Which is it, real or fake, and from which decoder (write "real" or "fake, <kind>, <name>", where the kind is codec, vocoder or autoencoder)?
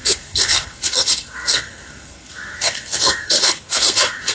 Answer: fake, codec, SNAC